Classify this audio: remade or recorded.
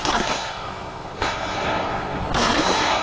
remade